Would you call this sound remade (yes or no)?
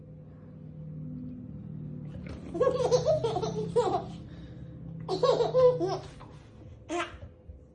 no